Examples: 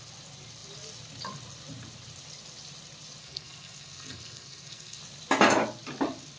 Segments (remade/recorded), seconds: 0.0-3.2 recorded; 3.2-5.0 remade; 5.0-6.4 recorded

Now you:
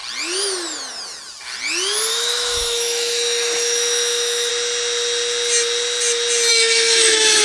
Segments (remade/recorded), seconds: 0.0-2.1 recorded; 2.1-4.5 remade; 4.5-6.5 recorded; 6.5-7.4 remade

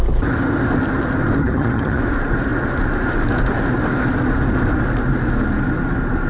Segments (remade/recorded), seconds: 0.0-1.4 recorded; 1.4-2.0 remade; 2.0-6.3 recorded

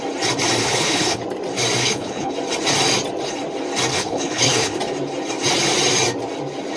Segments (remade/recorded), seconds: 0.0-0.6 recorded; 0.6-1.2 remade; 1.2-1.8 recorded; 1.8-2.3 remade; 2.3-3.9 recorded; 3.9-4.7 remade; 4.7-6.8 recorded

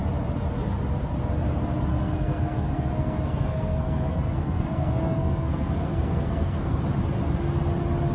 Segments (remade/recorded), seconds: 0.0-1.9 recorded; 1.9-6.8 remade; 6.8-8.1 recorded

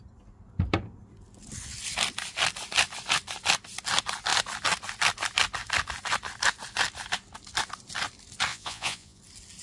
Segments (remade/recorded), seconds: 0.0-8.5 recorded; 8.5-9.2 remade; 9.2-9.6 recorded